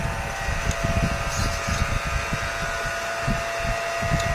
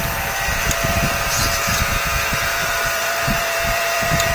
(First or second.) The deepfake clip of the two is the second